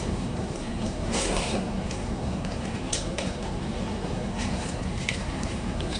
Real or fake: fake